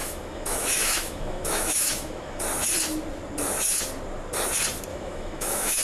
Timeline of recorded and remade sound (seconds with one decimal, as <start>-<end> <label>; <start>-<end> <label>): 0.0-2.4 remade; 2.4-4.9 recorded; 4.9-5.8 remade